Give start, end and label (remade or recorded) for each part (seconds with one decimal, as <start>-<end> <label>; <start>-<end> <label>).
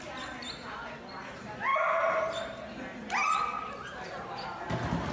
0.0-5.1 recorded